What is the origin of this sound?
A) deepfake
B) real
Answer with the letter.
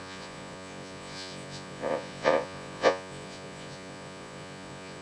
A